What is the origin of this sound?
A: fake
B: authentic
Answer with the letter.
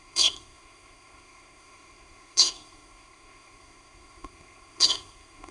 A